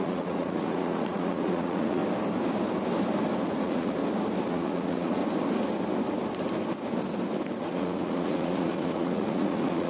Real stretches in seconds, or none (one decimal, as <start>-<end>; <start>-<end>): 2.0-3.6; 4.0-4.5; 5.2-7.6